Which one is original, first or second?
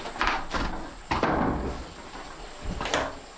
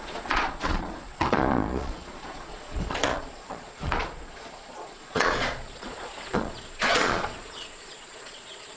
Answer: first